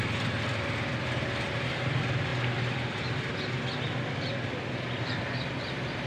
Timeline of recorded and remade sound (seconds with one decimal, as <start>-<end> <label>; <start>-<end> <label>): 0.0-6.1 recorded